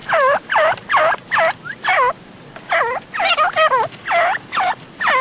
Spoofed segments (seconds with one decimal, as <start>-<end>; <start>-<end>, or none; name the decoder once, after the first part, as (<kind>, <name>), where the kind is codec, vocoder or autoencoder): none